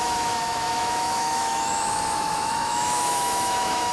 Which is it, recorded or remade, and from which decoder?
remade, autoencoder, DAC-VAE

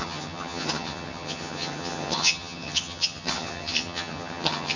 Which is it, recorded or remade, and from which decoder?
remade, vocoder, HiFi-GAN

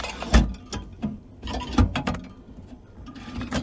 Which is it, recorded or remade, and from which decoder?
recorded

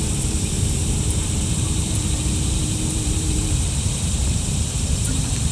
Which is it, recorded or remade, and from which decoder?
remade, vocoder, BigVGAN v2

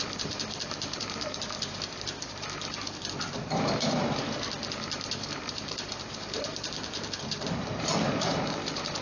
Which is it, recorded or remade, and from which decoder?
remade, vocoder, BigVGAN v2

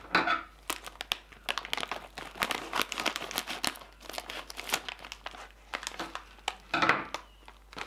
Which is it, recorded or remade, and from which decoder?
recorded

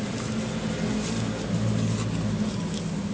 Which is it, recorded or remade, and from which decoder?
recorded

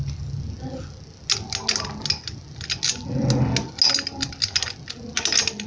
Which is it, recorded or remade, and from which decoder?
recorded